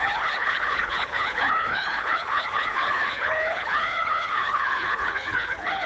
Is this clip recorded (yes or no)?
no